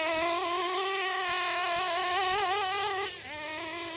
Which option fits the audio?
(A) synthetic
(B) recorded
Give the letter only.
B